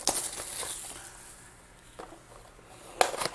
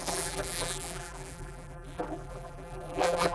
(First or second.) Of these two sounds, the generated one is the second